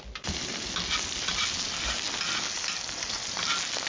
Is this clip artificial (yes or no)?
no